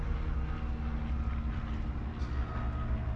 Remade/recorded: recorded